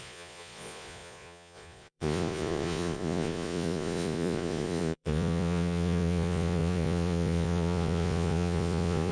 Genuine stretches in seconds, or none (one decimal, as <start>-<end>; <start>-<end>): none